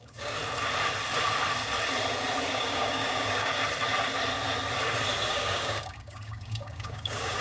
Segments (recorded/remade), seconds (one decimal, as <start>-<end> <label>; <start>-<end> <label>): 0.0-0.4 remade; 0.4-2.5 recorded; 2.5-3.6 remade; 3.6-5.3 recorded; 5.3-7.4 remade